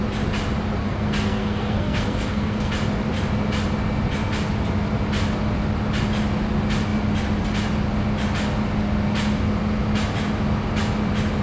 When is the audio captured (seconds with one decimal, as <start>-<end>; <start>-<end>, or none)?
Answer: 0.0-0.8; 2.7-11.4